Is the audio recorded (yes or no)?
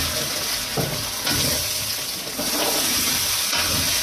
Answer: yes